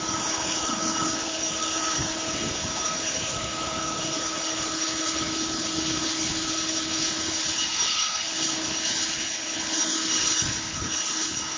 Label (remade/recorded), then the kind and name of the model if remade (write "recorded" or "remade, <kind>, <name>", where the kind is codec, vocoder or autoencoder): remade, codec, HILCodec